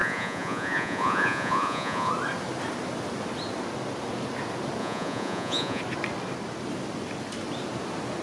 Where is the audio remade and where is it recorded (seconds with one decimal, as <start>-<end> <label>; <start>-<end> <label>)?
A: 0.0-2.1 remade; 2.1-4.8 recorded; 4.8-5.8 remade; 5.8-8.2 recorded